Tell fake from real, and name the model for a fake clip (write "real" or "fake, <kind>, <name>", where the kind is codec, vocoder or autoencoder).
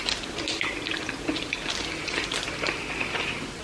real